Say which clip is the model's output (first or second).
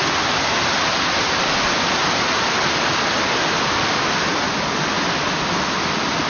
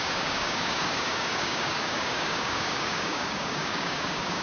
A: second